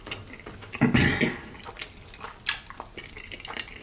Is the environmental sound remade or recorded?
recorded